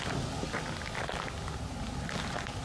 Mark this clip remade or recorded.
recorded